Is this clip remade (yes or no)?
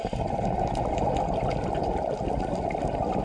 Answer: no